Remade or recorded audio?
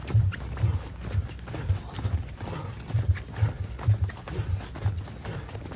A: recorded